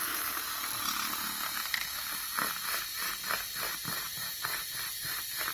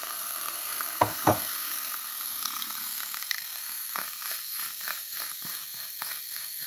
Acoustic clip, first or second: first